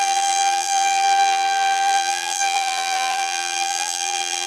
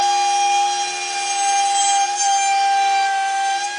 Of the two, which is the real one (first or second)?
second